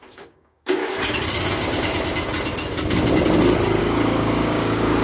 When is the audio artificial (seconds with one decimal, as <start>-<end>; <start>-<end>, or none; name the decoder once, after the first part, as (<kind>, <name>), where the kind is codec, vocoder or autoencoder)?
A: 0.0-0.8 (codec, DAC); 3.8-5.0